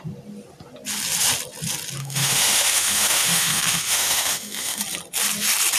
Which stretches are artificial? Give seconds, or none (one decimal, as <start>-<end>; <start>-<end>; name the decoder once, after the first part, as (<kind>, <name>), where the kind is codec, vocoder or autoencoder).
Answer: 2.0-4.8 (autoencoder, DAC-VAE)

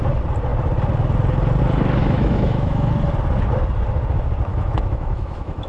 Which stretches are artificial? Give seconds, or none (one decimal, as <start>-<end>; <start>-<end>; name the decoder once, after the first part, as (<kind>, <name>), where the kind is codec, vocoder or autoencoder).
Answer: 2.0-2.9 (autoencoder, DAC-VAE); 4.5-5.7

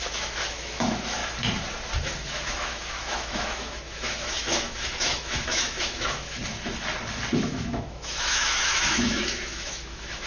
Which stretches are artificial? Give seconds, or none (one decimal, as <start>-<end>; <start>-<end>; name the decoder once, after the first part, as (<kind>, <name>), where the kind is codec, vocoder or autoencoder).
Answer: 0.0-1.2 (autoencoder, DAC-VAE); 2.0-6.4; 7.4-10.3

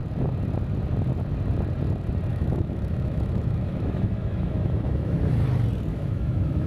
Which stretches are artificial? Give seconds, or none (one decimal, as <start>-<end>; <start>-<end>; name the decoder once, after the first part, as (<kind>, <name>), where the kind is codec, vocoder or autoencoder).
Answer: 2.3-5.2 (autoencoder, DAC-VAE); 5.9-6.7

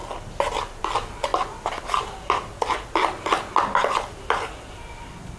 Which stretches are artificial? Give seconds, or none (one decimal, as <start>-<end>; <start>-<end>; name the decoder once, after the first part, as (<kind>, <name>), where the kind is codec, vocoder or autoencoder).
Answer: none

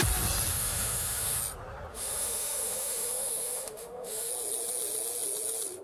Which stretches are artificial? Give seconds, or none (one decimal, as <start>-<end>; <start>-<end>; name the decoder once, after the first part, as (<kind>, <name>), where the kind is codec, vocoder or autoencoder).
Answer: 0.5-1.4 (autoencoder, DAC-VAE); 1.9-4.3

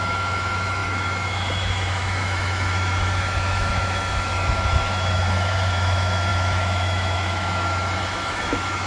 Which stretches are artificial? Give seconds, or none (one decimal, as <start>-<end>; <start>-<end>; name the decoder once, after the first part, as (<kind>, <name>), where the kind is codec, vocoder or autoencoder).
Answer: 0.0-8.9 (autoencoder, DAC-VAE)